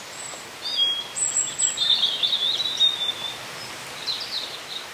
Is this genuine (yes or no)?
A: yes